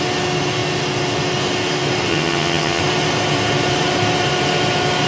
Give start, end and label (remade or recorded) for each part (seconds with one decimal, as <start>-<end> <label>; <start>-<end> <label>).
0.0-2.1 recorded; 2.1-2.8 remade; 2.8-5.1 recorded